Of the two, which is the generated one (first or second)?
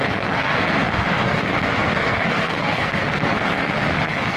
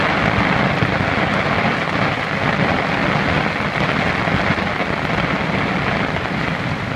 first